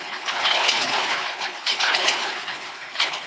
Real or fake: fake